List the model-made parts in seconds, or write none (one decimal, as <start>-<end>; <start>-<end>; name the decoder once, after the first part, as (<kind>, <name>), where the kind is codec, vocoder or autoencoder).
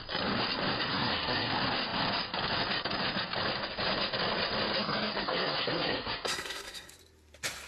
0.9-1.5 (codec, SNAC); 4.8-6.9